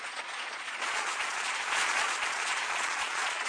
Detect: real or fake fake